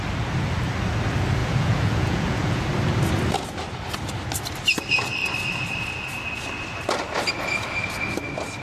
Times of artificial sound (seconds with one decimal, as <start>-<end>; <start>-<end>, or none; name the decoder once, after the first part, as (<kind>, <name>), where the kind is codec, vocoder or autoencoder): 1.4-2.6 (vocoder, Vocos)

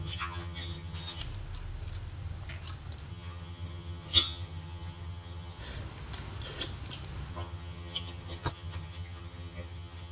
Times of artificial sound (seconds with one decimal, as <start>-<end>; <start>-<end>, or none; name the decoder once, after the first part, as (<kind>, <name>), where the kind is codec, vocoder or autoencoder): 0.0-1.2 (vocoder, HiFi-GAN); 3.1-5.6; 7.3-10.1

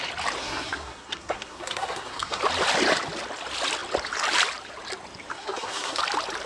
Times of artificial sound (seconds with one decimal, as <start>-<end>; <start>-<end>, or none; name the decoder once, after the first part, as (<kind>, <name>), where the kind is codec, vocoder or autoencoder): 0.4-2.4 (codec, SNAC); 5.3-6.0

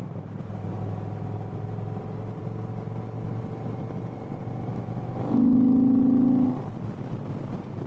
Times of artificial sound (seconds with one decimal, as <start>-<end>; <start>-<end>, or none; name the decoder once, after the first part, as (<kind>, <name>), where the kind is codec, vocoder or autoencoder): 4.7-5.5 (autoencoder, DAC-VAE)

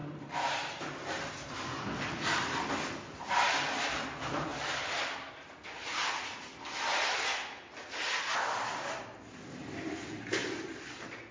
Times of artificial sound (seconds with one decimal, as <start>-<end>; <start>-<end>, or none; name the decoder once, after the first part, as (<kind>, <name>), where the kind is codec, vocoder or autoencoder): 0.0-11.3 (vocoder, BigVGAN v2)

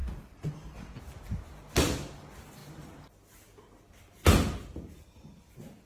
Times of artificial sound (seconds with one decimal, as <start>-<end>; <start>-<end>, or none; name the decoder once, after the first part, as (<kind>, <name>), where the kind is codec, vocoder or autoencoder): none

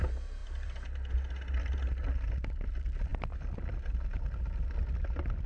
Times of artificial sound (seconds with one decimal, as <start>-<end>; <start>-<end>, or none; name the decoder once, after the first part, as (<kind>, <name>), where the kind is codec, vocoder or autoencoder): 0.4-1.1 (vocoder, BigVGAN v2)

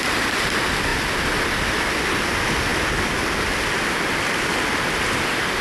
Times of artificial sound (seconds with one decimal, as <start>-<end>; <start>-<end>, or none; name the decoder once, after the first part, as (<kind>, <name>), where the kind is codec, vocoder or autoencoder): none